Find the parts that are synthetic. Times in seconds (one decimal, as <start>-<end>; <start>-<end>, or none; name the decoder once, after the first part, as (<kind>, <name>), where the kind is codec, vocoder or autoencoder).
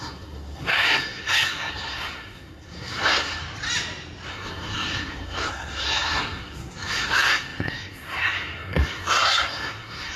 0.0-3.4 (codec, SNAC); 4.3-10.2